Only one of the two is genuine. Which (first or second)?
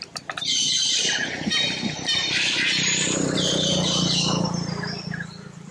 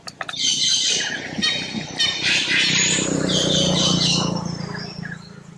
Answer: second